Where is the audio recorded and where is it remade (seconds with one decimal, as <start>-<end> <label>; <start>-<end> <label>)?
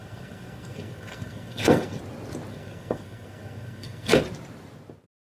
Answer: 0.0-2.0 remade; 2.0-2.5 recorded; 2.5-4.2 remade; 4.2-5.2 recorded